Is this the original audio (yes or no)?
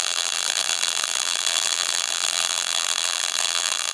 no